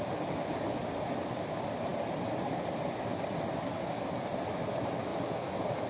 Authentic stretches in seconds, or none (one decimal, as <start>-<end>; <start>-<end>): 0.0-5.9